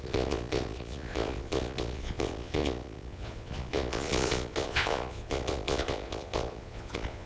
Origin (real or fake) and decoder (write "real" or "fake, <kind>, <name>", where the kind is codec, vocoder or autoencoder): fake, vocoder, Vocos